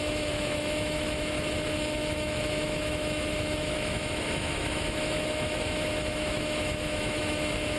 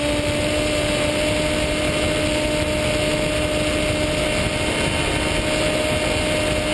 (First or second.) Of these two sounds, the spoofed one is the first